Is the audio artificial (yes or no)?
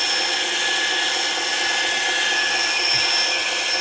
no